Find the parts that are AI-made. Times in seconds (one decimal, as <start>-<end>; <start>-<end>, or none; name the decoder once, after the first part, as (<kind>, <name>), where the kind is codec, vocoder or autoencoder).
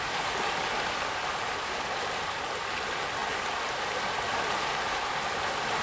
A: none